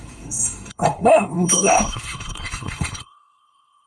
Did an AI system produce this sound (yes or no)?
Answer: yes